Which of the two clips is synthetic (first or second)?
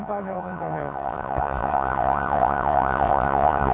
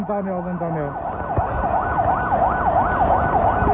first